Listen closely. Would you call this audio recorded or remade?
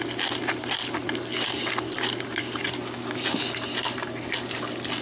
recorded